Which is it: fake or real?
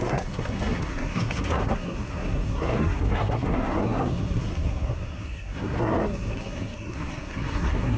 fake